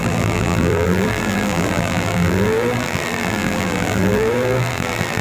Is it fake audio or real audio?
fake